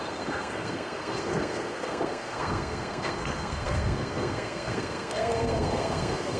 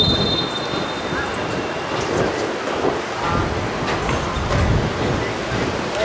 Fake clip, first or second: first